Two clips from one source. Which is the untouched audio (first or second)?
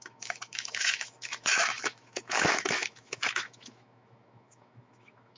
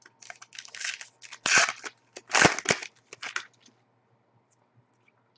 second